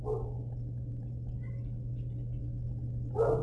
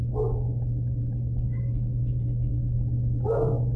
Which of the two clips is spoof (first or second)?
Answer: second